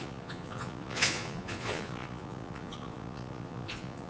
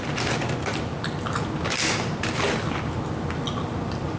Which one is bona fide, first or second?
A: second